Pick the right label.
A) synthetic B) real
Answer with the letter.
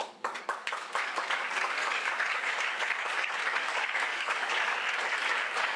A